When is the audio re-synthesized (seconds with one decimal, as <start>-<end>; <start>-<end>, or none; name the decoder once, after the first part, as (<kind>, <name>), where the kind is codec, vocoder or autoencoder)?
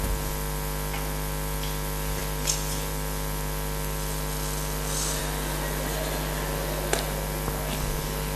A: none